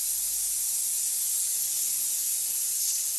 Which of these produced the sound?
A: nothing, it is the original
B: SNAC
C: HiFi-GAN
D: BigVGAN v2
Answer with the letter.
A